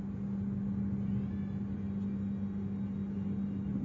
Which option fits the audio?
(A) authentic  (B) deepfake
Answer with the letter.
A